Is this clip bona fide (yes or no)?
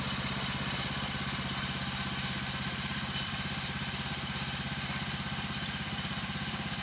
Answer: yes